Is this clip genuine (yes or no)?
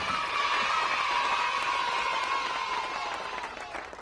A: yes